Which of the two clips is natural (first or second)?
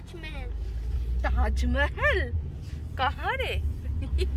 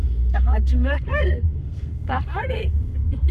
first